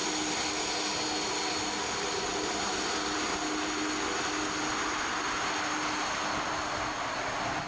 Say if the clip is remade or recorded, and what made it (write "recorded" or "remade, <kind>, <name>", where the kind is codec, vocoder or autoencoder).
recorded